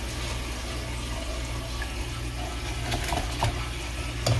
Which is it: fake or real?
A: real